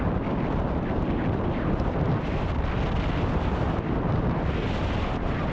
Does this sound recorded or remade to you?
recorded